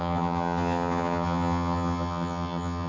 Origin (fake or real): fake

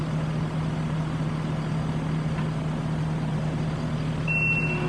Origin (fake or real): real